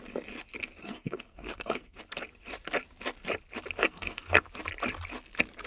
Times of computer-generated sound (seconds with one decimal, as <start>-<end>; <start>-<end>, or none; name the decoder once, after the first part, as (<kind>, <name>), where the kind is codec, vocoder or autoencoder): 0.8-2.0 (codec, SNAC); 3.8-4.4